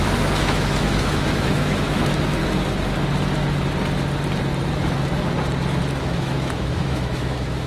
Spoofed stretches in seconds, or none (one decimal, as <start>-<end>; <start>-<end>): 0.0-2.4; 6.0-7.7